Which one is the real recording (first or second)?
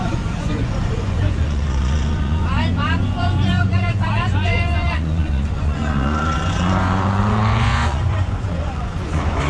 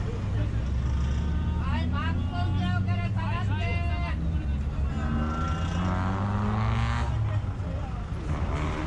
second